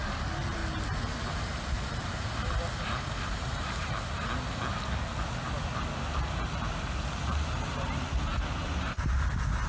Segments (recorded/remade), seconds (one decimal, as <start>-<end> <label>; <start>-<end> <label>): 0.0-9.7 recorded